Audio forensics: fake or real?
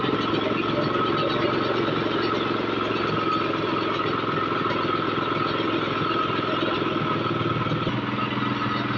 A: real